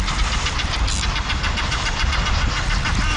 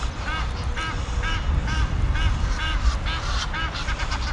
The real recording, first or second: second